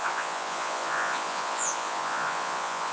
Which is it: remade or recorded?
remade